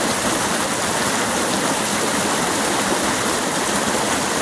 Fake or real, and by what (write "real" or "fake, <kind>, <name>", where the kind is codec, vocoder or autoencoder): real